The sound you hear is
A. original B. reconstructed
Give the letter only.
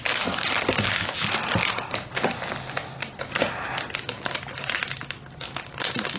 A